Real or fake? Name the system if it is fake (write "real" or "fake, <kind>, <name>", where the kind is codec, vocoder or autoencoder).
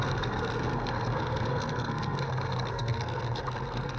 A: fake, codec, SNAC